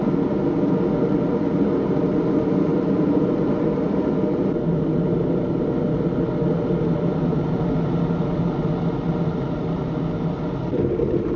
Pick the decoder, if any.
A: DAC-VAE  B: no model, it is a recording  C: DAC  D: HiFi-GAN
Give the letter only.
B